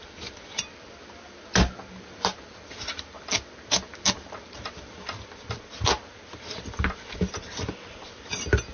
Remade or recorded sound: recorded